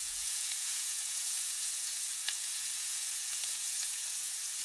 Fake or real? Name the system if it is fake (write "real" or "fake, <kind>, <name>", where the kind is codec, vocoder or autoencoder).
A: fake, vocoder, Vocos